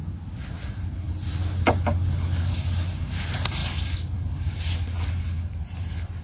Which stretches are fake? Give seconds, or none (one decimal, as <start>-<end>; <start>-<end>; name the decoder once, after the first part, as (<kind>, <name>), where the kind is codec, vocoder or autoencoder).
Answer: none